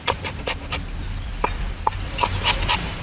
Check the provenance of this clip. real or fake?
fake